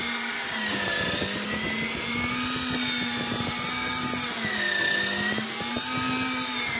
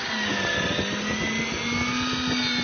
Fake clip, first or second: first